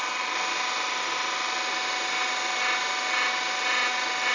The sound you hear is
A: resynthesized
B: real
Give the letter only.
B